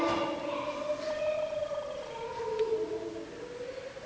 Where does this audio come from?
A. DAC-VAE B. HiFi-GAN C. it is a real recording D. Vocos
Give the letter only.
C